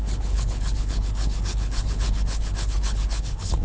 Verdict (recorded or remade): remade